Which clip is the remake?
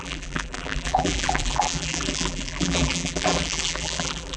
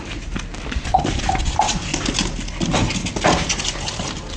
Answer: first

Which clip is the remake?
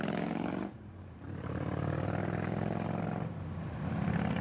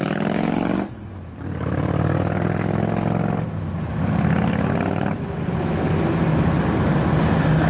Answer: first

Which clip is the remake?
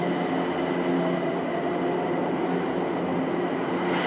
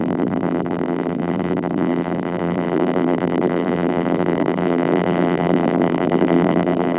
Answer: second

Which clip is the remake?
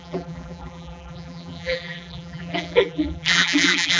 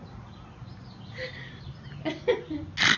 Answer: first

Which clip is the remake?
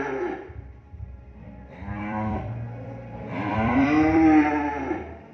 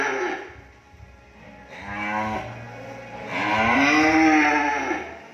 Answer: first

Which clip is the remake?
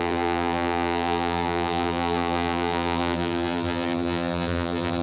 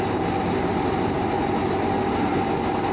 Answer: first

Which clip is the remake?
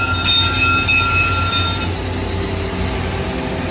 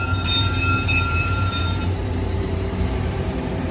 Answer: second